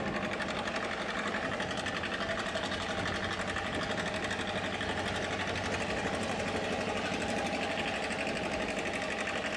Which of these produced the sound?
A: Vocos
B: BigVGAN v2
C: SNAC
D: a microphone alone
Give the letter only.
D